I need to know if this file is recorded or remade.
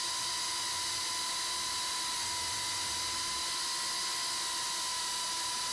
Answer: recorded